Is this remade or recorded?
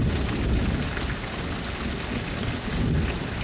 recorded